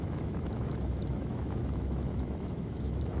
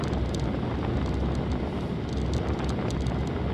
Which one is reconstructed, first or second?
first